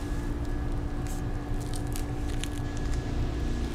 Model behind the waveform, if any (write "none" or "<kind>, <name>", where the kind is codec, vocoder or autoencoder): none